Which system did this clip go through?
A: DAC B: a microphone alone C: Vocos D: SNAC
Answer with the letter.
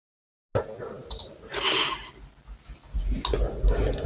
B